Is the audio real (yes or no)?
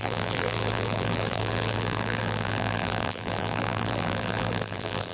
no